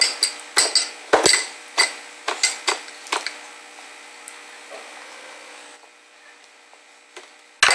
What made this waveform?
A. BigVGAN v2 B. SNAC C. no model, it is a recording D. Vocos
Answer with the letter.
C